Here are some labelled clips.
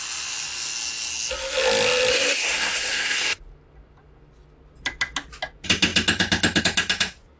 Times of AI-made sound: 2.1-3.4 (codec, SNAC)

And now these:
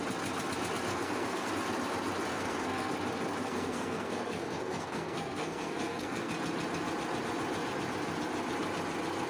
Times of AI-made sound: 0.9-1.5 (codec, SNAC); 2.3-2.9; 3.4-6.3

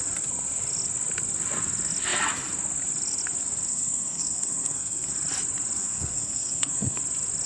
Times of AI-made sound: 3.7-5.1 (codec, SNAC); 5.8-7.0